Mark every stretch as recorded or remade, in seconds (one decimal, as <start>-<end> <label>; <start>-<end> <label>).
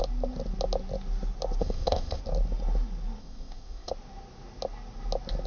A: 0.0-1.6 recorded; 1.6-2.2 remade; 2.2-3.2 recorded; 3.2-3.9 remade; 3.9-5.5 recorded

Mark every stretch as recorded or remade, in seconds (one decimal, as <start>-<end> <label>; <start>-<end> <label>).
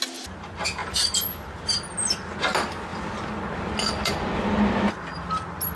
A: 0.0-5.8 recorded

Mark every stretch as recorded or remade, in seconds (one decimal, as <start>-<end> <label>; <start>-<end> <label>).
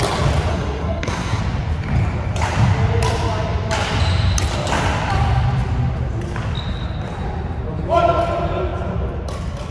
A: 0.0-0.5 recorded; 0.5-1.4 remade; 1.4-9.7 recorded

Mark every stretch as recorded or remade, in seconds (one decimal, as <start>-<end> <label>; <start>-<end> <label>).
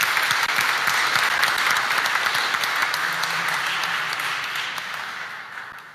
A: 0.0-5.9 recorded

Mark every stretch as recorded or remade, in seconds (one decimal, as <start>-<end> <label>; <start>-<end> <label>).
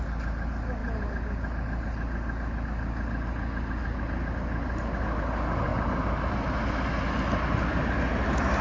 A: 0.0-8.6 recorded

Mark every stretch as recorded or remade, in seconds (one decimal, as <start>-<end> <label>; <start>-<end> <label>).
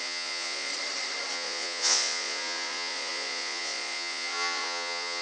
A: 0.0-0.7 remade; 0.7-1.3 recorded; 1.3-5.2 remade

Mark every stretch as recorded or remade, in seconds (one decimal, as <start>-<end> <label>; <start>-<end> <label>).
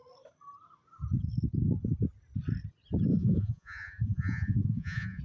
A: 0.0-3.1 recorded; 3.1-5.2 remade